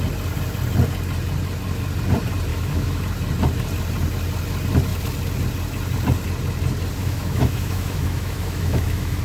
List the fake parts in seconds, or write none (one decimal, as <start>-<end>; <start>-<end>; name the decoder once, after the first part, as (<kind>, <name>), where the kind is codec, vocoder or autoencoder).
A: 2.5-3.0 (autoencoder, DAC-VAE); 7.0-9.2